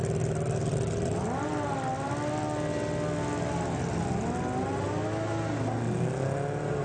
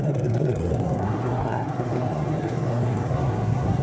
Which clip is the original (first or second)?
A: first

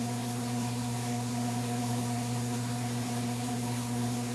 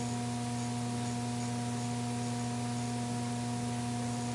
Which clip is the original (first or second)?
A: second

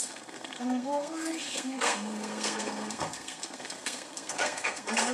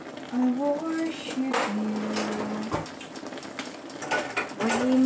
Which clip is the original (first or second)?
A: second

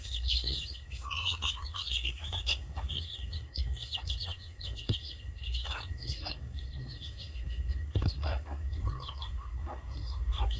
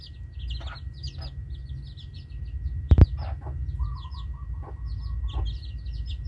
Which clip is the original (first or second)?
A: second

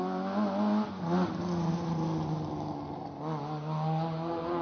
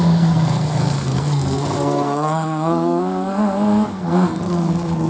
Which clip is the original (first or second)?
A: first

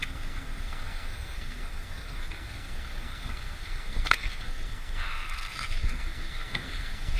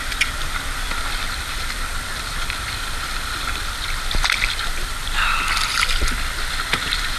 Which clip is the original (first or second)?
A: second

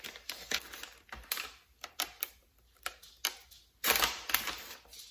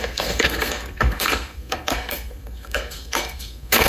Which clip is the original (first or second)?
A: first